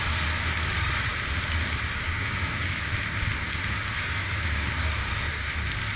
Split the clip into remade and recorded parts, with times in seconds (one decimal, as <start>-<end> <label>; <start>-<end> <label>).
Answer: 0.0-1.1 remade; 1.1-2.0 recorded; 2.0-2.9 remade; 2.9-3.8 recorded; 3.8-6.0 remade